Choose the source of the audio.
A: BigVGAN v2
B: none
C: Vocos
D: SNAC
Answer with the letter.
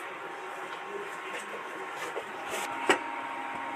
B